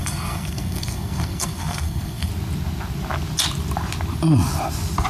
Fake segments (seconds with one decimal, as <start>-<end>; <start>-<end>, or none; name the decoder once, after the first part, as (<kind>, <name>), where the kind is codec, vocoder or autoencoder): 0.0-2.3 (codec, SNAC)